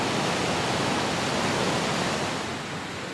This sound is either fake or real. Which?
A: real